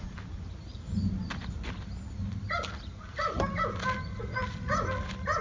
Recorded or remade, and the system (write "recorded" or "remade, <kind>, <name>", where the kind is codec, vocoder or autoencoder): recorded